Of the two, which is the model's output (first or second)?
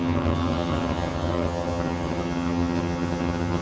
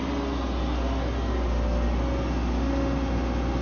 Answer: first